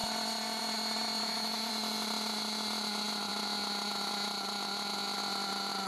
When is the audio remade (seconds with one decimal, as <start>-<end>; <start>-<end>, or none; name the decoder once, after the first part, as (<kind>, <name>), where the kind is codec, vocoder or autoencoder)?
1.2-1.7 (autoencoder, DAC-VAE)